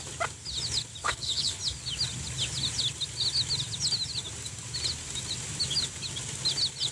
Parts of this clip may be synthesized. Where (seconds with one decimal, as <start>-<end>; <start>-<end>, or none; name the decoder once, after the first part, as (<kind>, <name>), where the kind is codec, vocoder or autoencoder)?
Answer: 1.0-1.6 (codec, HILCodec)